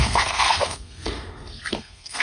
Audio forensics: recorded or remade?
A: remade